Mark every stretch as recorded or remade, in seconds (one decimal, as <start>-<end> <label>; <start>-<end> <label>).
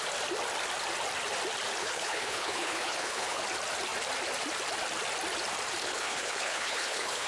0.0-1.8 recorded; 1.8-3.4 remade; 3.4-5.8 recorded; 5.8-7.3 remade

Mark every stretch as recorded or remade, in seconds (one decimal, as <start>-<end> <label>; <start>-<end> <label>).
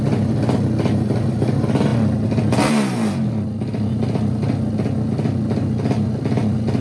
0.0-6.8 recorded